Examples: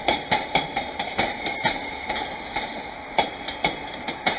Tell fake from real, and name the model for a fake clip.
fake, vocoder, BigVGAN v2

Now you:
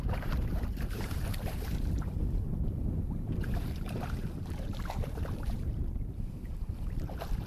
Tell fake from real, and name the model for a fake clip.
fake, vocoder, BigVGAN v2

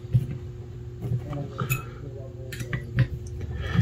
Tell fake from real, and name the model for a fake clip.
real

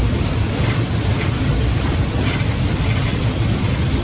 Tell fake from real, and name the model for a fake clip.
fake, vocoder, BigVGAN v2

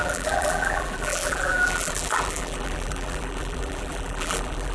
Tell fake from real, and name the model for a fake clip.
fake, vocoder, BigVGAN v2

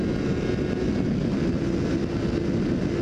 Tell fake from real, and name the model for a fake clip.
real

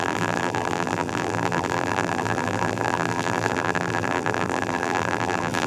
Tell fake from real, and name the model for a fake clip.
fake, vocoder, BigVGAN v2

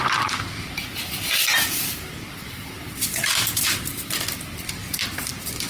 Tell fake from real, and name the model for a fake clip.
fake, vocoder, BigVGAN v2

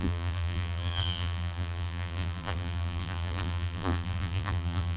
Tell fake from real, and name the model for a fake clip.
fake, vocoder, BigVGAN v2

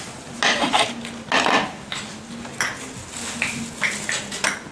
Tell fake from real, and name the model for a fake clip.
real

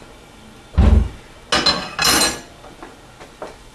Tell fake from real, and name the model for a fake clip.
real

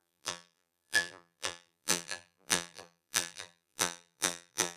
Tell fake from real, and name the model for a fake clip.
fake, vocoder, BigVGAN v2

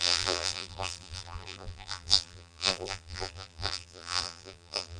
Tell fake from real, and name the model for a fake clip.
fake, vocoder, BigVGAN v2